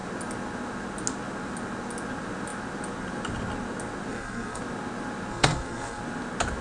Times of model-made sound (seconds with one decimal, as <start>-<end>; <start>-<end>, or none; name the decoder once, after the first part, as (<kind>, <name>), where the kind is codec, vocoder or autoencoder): 4.1-4.6 (codec, SNAC); 5.3-6.0